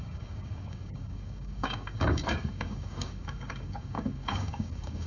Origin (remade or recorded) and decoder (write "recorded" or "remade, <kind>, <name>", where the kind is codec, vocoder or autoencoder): remade, codec, DAC